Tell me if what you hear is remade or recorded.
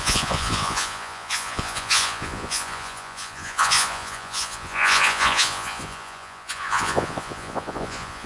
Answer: remade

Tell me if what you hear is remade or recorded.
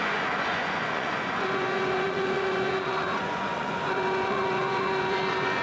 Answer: remade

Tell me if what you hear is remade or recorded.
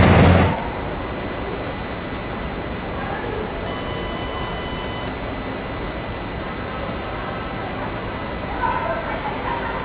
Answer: recorded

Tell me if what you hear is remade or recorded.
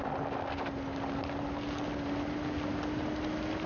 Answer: recorded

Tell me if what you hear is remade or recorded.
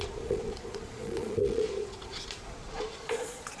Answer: remade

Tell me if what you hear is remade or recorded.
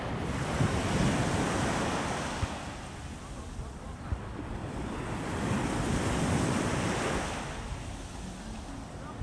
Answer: recorded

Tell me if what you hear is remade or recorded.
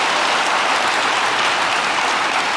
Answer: recorded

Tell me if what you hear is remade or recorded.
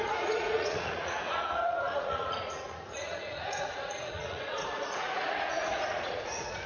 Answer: remade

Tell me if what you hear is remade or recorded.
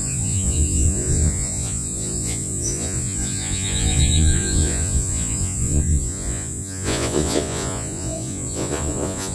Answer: remade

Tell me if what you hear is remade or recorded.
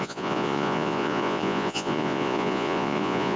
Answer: remade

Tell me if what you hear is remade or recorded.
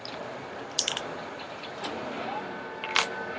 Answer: recorded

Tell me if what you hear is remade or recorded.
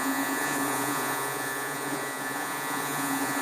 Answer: remade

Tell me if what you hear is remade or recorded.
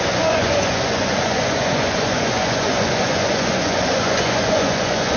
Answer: remade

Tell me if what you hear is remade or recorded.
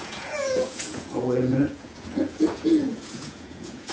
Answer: remade